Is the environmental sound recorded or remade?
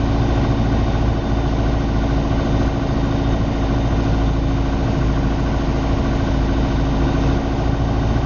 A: recorded